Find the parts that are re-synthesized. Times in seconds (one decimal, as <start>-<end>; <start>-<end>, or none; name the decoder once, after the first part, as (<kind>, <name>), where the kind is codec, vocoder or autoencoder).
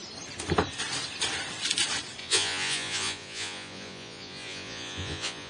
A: 2.2-5.5 (vocoder, Vocos)